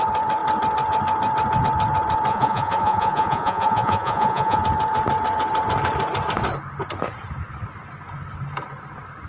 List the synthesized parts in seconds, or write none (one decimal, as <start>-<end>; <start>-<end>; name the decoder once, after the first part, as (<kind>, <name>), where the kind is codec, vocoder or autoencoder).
2.3-4.6 (vocoder, Vocos)